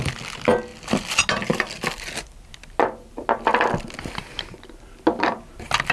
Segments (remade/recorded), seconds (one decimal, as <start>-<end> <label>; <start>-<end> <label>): 0.0-5.9 recorded